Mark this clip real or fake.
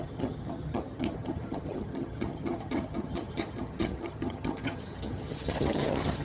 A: fake